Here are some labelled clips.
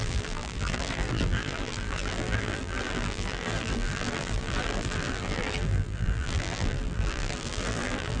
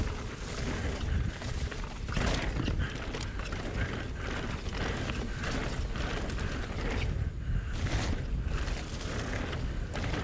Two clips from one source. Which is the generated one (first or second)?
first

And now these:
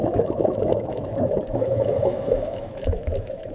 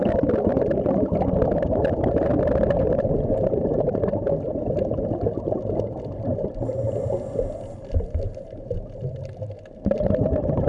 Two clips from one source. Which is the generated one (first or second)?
first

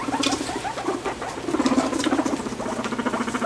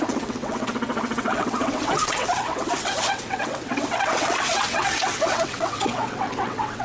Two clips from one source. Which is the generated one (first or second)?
second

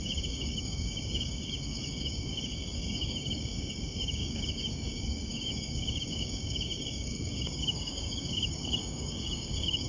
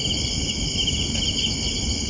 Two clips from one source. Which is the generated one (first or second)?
first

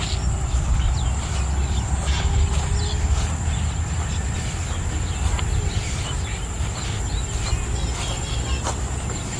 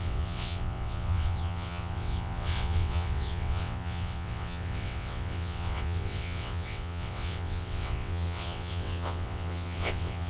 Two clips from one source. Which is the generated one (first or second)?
second